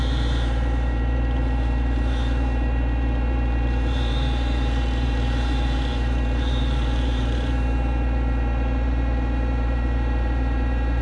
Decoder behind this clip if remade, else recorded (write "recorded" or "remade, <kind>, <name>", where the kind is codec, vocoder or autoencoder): remade, vocoder, BigVGAN v2